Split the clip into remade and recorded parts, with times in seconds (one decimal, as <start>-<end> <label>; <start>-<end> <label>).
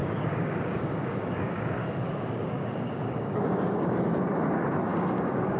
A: 0.0-1.4 remade; 1.4-1.8 recorded; 1.8-4.0 remade; 4.0-4.9 recorded; 4.9-5.6 remade